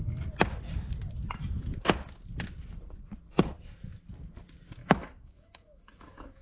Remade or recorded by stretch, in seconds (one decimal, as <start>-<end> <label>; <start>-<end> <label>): 0.0-4.8 recorded; 4.8-6.4 remade